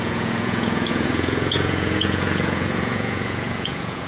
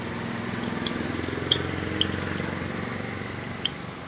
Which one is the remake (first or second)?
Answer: first